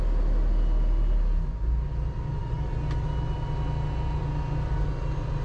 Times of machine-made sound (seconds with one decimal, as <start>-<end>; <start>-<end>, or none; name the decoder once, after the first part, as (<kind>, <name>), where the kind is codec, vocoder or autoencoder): none